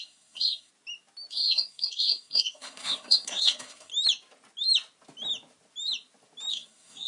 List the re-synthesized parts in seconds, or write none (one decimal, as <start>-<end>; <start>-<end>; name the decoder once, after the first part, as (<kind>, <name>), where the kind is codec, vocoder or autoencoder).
0.0-0.7 (codec, SNAC); 1.3-3.9; 6.5-7.1